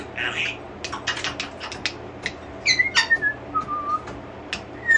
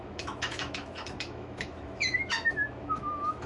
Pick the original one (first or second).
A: first